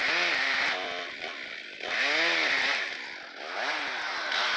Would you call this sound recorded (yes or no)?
yes